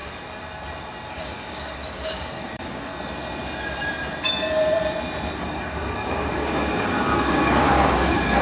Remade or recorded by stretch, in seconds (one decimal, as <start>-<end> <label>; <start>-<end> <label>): 0.0-1.1 recorded; 1.1-2.9 remade; 2.9-5.4 recorded; 5.4-8.4 remade